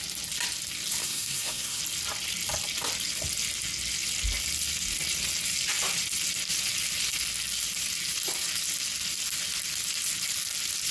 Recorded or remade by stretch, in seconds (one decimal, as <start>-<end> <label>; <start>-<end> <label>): 0.0-1.0 recorded; 1.0-1.8 remade; 1.8-10.9 recorded